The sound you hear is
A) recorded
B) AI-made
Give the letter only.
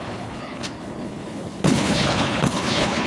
B